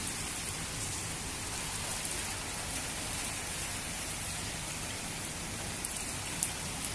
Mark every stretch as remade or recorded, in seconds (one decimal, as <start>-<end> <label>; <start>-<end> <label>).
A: 0.0-0.7 remade; 0.7-6.9 recorded